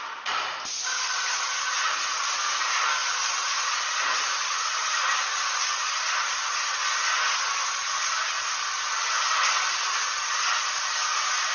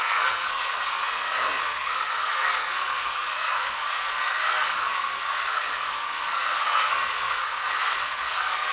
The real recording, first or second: first